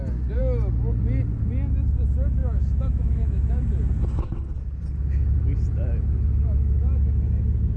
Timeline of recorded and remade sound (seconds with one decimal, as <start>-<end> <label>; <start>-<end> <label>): 0.0-2.4 recorded; 2.4-3.5 remade; 3.5-7.8 recorded